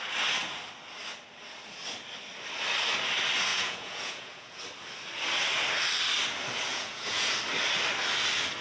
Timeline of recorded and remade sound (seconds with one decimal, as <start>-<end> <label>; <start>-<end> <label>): 0.0-3.5 recorded; 3.5-4.6 remade; 4.6-6.7 recorded; 6.7-7.3 remade; 7.3-8.6 recorded